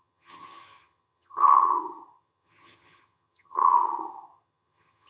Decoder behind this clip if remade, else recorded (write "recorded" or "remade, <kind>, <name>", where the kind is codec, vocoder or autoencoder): remade, vocoder, HiFi-GAN